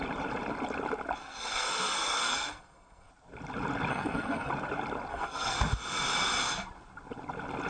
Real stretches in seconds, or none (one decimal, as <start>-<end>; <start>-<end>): 0.0-1.2; 3.1-3.9; 4.5-5.1; 5.6-7.7